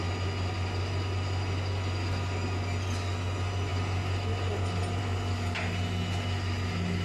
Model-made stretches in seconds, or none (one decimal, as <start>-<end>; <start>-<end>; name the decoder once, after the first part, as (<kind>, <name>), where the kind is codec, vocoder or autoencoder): none